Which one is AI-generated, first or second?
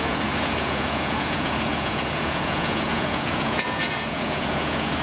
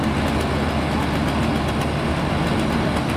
first